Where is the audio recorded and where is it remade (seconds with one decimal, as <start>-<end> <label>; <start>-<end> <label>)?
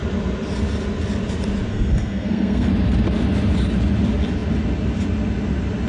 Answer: 0.0-1.7 recorded; 1.7-2.7 remade; 2.7-5.9 recorded